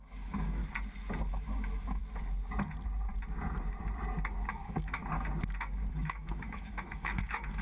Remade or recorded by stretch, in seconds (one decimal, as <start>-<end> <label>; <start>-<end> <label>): 0.0-0.6 remade; 0.6-1.3 recorded; 1.3-2.0 remade; 2.0-4.5 recorded; 4.5-5.0 remade; 5.0-5.9 recorded; 5.9-7.6 remade